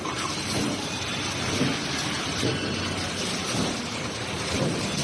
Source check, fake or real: real